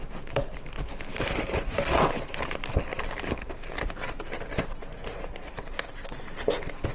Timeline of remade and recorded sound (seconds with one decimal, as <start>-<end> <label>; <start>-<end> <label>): 0.0-1.1 recorded; 1.1-1.8 remade; 1.8-2.9 recorded; 2.9-6.2 remade; 6.2-6.9 recorded